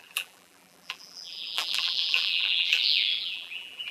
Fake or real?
fake